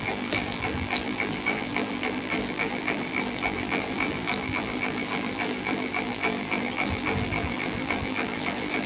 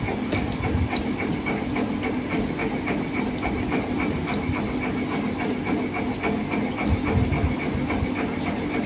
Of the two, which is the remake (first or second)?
first